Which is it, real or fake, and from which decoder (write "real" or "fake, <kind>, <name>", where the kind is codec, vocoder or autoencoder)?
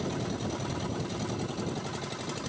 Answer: real